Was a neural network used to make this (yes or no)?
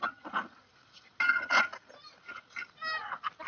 no